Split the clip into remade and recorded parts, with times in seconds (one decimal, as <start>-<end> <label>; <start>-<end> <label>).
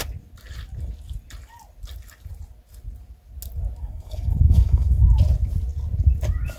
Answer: 0.0-3.8 recorded; 3.8-5.0 remade; 5.0-6.6 recorded